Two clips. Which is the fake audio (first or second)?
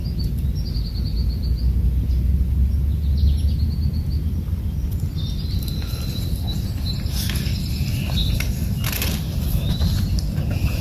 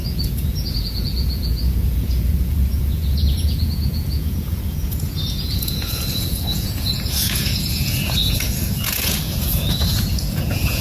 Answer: second